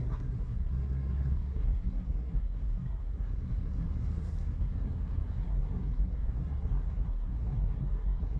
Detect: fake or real fake